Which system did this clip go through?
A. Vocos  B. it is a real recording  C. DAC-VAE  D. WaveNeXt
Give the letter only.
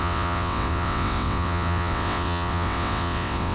D